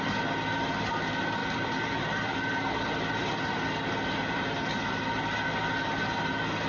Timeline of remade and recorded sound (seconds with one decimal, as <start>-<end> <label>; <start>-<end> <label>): 0.0-1.4 recorded; 1.4-4.9 remade; 4.9-6.7 recorded